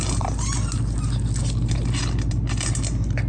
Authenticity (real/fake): real